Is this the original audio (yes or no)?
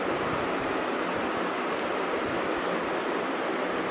yes